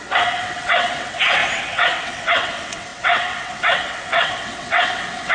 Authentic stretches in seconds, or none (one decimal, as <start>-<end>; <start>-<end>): none